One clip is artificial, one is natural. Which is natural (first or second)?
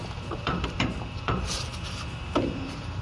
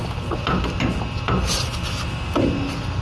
second